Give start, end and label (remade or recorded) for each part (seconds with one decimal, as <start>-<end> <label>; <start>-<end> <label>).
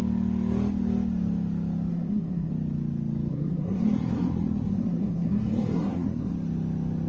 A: 0.0-1.9 recorded; 1.9-2.5 remade; 2.5-3.3 recorded; 3.3-6.3 remade; 6.3-7.1 recorded